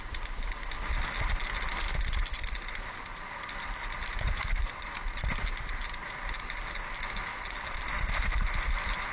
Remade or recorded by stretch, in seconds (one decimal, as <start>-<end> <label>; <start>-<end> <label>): 0.0-3.1 recorded; 3.1-5.4 remade; 5.4-7.3 recorded; 7.3-8.1 remade; 8.1-9.1 recorded